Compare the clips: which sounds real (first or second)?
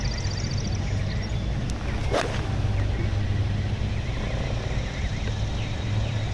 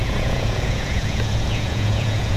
first